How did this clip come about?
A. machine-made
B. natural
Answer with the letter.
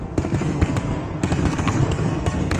A